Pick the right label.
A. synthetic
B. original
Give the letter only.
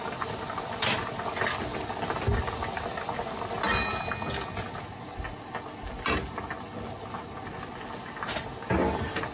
B